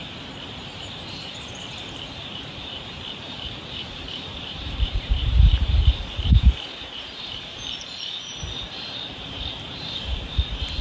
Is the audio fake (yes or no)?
yes